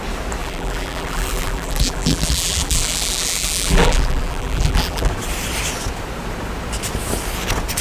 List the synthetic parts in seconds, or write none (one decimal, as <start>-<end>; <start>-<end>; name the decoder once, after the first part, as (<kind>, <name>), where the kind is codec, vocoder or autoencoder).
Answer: 0.4-5.1 (vocoder, BigVGAN v2)